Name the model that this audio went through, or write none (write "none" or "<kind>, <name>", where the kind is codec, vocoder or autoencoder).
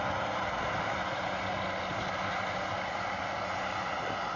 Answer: none